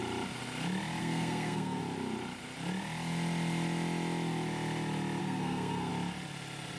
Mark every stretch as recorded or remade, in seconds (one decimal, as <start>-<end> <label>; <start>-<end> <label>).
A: 0.0-1.0 recorded; 1.0-1.8 remade; 1.8-5.2 recorded; 5.2-5.9 remade; 5.9-6.8 recorded